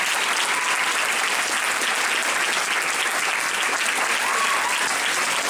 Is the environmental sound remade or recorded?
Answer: recorded